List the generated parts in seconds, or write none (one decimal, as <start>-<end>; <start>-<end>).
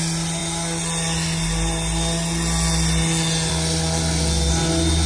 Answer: none